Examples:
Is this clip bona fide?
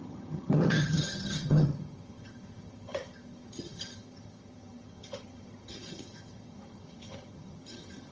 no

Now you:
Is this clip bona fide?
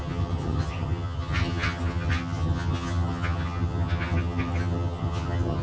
no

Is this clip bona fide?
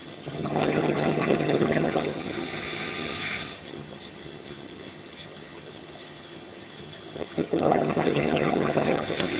no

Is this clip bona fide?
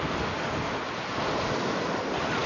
yes